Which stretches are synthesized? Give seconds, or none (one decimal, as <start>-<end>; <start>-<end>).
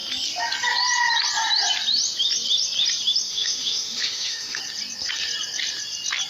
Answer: 3.3-4.6